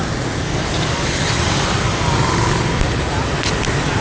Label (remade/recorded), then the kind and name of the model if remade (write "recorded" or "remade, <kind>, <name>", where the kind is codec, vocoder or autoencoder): recorded